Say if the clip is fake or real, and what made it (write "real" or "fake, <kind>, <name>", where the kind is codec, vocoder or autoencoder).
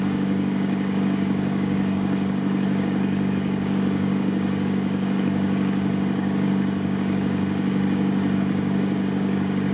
fake, codec, DAC